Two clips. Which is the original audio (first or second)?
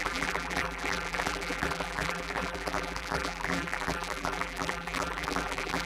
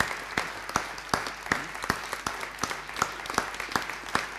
second